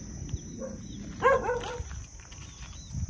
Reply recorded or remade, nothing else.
recorded